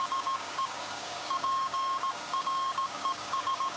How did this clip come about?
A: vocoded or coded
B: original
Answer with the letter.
A